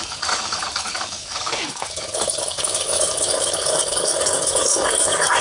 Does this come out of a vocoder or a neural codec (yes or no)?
yes